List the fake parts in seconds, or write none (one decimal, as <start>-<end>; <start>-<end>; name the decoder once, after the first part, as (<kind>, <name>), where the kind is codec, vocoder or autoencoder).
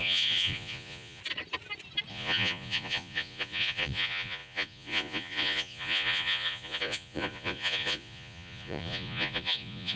0.0-1.2 (vocoder, Vocos); 2.1-10.0